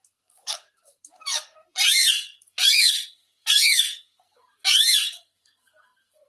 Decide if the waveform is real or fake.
fake